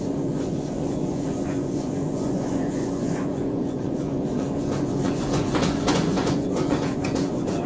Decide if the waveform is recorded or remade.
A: remade